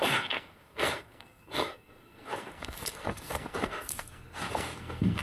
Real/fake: fake